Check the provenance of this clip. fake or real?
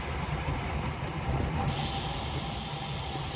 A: real